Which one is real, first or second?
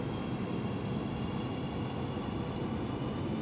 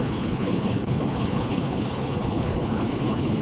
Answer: first